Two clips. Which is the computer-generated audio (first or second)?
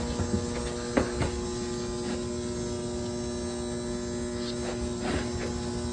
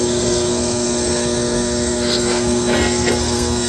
second